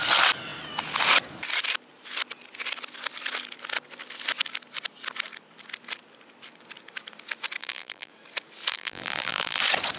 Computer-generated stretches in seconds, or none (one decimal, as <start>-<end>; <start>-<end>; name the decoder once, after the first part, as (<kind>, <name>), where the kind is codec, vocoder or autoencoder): 7.6-8.1 (vocoder, BigVGAN v2); 8.7-9.6